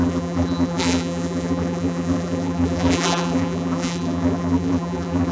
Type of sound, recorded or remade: remade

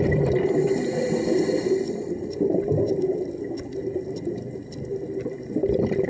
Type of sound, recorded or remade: remade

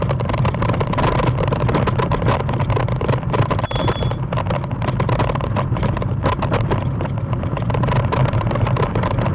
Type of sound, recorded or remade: remade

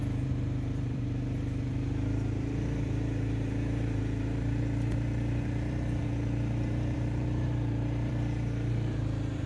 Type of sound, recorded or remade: remade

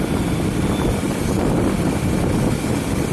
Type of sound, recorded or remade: recorded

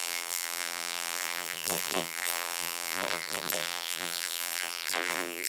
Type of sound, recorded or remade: remade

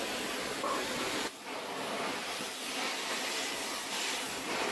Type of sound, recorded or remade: remade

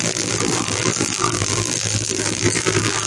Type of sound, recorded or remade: remade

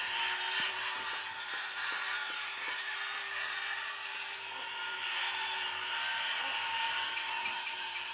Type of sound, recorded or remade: remade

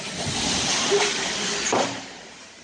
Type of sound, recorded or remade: remade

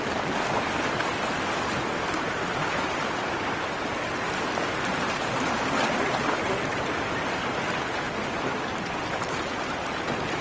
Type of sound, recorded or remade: recorded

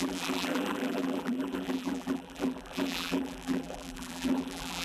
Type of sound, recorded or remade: remade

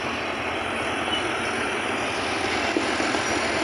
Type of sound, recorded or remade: recorded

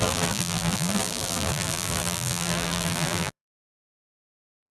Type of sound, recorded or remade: remade